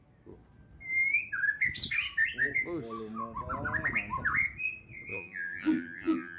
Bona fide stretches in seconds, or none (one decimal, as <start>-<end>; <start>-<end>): 0.0-5.1